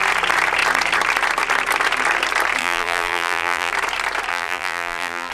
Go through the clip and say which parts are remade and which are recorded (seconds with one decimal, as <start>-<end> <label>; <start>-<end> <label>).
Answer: 0.0-2.6 recorded; 2.6-3.7 remade; 3.7-4.3 recorded; 4.3-5.3 remade